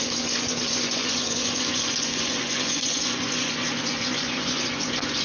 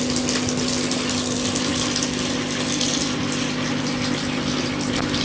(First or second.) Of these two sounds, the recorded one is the second